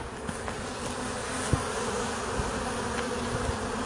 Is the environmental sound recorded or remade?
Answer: recorded